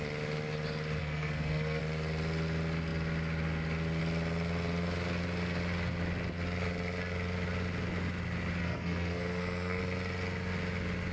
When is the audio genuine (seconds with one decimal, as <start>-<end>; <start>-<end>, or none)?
0.0-1.0; 1.8-8.6; 9.8-11.1